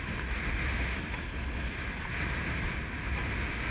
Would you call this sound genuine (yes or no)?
yes